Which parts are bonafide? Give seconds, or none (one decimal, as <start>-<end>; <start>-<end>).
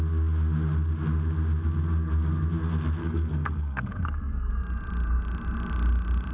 0.0-3.0; 4.5-6.3